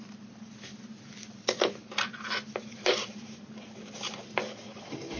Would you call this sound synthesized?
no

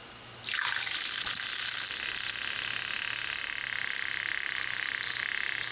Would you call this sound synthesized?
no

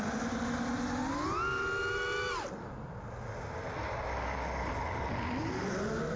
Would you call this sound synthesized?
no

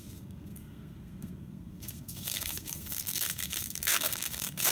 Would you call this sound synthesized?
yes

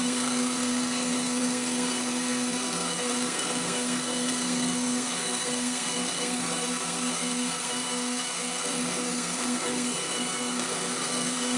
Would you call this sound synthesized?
yes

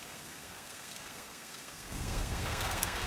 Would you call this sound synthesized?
yes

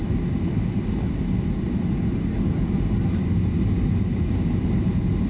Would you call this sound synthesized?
no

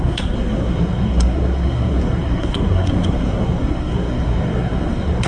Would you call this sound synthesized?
yes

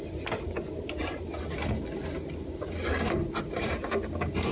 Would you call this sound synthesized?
no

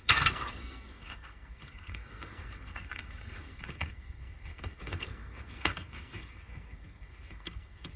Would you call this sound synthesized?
yes